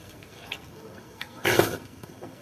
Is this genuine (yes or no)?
no